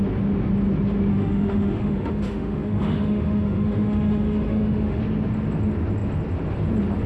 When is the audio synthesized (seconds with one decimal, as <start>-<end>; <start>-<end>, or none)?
1.1-5.0